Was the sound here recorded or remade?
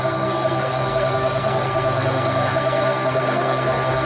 remade